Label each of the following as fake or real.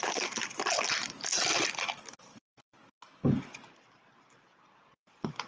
real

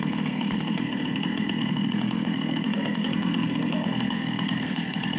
fake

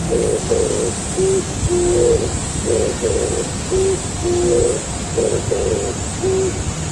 real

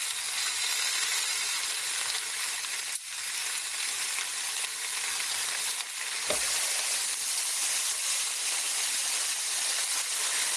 real